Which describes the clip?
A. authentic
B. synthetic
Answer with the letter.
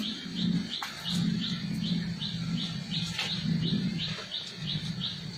A